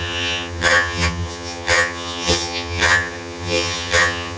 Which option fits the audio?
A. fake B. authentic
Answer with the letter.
A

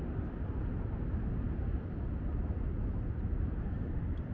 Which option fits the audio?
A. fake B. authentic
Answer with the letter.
B